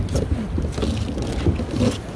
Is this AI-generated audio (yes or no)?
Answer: no